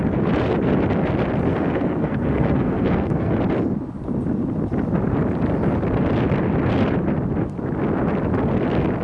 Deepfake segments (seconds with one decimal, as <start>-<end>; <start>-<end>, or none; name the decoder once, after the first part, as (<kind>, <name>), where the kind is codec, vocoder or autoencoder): 1.5-3.3 (codec, SNAC)